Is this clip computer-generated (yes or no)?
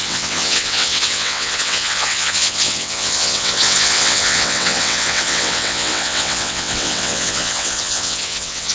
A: yes